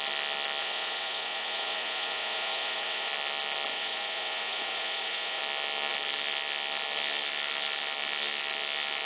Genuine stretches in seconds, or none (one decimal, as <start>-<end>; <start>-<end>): 0.0-0.6; 3.1-3.7; 5.4-9.1